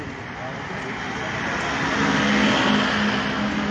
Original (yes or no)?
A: yes